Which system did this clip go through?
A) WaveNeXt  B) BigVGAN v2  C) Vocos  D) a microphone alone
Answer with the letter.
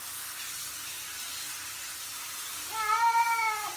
D